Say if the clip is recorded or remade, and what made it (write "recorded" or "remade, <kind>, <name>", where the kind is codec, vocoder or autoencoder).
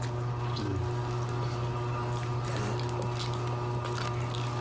recorded